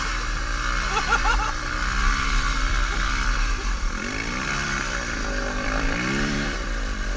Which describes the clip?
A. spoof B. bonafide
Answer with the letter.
A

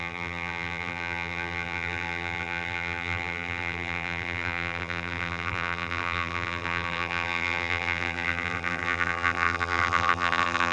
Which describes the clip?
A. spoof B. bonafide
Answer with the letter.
A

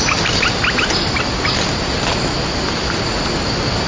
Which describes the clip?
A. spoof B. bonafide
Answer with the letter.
B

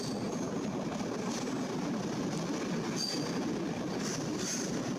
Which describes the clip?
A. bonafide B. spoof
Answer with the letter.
A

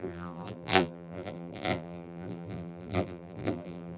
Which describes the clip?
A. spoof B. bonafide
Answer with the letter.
A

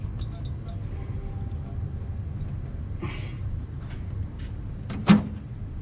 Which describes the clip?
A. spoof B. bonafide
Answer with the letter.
B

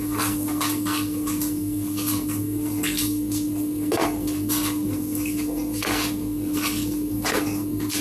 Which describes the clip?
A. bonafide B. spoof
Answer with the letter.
B